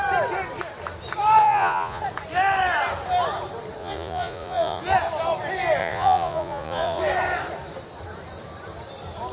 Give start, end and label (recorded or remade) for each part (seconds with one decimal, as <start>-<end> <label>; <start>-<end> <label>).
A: 0.0-1.4 recorded; 1.4-2.0 remade; 2.0-3.8 recorded; 3.8-4.8 remade; 4.8-5.8 recorded; 5.8-7.0 remade; 7.0-9.3 recorded